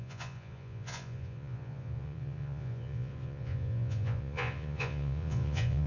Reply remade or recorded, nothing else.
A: remade